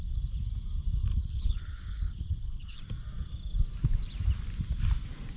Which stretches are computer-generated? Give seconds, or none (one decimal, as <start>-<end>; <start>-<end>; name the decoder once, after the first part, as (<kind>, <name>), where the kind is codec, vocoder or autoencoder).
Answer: 1.1-2.8 (codec, HILCodec)